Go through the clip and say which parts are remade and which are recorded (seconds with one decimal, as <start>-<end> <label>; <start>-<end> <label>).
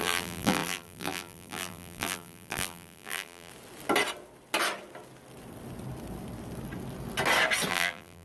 0.0-3.5 remade; 3.5-7.7 recorded; 7.7-8.2 remade